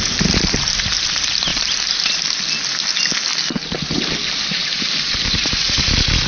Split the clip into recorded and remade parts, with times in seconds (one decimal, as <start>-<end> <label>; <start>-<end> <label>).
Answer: 0.0-1.5 recorded; 1.5-2.4 remade; 2.4-4.6 recorded; 4.6-5.5 remade; 5.5-6.3 recorded